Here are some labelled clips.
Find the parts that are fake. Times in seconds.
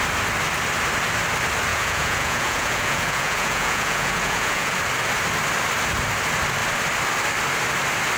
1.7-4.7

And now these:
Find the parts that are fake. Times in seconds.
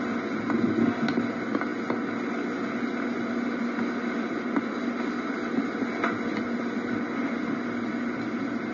none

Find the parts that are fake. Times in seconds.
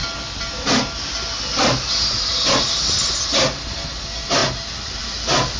none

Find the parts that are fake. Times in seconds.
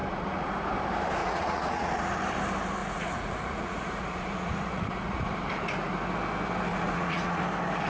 0.0-0.5; 1.2-2.1; 2.8-5.3; 6.7-7.4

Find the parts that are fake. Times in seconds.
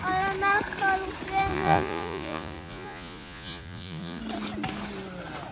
1.5-4.2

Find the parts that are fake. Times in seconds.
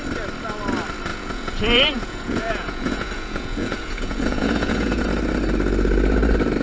1.1-5.1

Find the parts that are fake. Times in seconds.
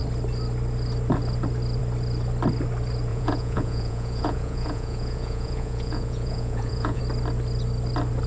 3.1-7.0